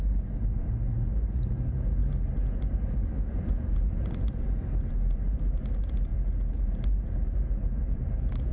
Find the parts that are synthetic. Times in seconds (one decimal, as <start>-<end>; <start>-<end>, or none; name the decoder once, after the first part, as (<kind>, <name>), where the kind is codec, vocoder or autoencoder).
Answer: 0.0-6.1 (vocoder, BigVGAN v2); 6.6-8.5